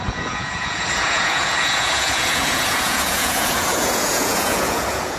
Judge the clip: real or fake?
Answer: fake